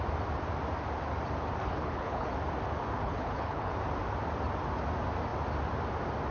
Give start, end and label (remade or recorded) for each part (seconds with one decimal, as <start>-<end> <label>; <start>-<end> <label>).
0.0-1.6 recorded; 1.6-2.3 remade; 2.3-3.0 recorded; 3.0-3.7 remade; 3.7-6.3 recorded